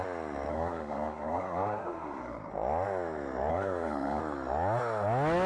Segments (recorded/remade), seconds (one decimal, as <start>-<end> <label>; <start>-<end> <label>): 0.0-0.5 recorded; 0.5-2.5 remade; 2.5-3.5 recorded; 3.5-4.2 remade; 4.2-5.5 recorded